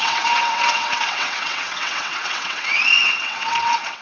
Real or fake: fake